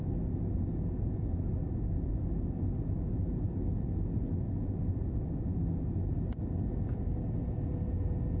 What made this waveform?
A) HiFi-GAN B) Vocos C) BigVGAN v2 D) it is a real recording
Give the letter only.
D